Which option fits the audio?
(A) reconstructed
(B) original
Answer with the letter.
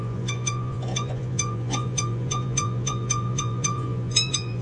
A